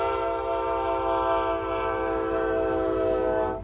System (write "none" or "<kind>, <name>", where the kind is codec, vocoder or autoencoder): none